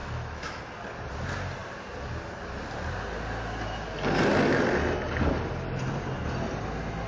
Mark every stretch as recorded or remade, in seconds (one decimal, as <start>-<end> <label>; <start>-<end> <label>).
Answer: 0.0-0.6 remade; 0.6-7.1 recorded